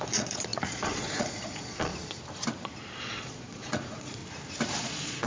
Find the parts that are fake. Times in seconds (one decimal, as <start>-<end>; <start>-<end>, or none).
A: 0.0-1.9; 3.0-4.2; 4.8-5.3